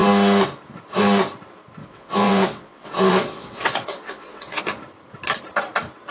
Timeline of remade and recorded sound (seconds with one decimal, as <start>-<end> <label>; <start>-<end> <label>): 0.0-1.8 recorded; 1.8-4.6 remade; 4.6-6.1 recorded